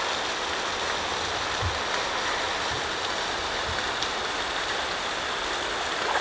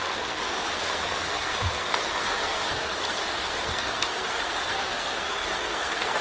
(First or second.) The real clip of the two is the first